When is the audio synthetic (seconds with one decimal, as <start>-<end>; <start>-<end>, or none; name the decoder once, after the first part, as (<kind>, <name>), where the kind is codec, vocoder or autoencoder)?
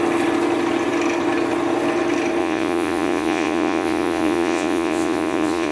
2.4-5.7 (vocoder, Vocos)